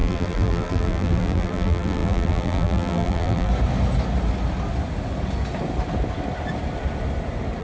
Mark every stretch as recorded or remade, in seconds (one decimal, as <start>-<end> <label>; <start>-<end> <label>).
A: 0.0-3.5 remade; 3.5-7.6 recorded